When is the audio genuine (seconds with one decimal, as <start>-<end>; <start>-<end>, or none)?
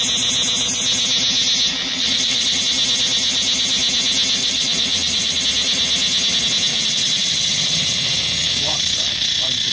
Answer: 0.0-1.7; 2.6-4.4; 5.4-6.7